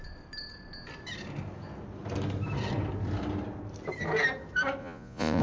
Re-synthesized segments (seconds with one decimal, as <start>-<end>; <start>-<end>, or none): 4.8-5.4